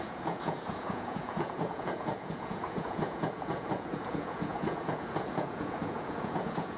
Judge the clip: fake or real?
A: fake